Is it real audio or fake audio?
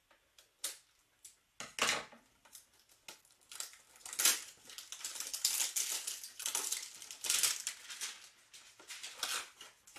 real